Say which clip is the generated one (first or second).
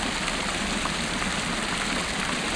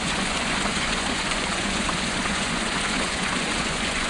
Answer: second